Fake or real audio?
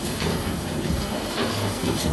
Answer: fake